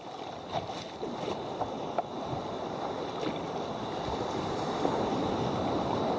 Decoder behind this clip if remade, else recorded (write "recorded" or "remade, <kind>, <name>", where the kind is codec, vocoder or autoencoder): recorded